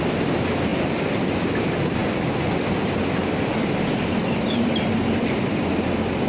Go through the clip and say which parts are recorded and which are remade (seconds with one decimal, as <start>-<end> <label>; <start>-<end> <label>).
0.0-6.3 remade